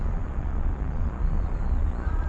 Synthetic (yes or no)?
yes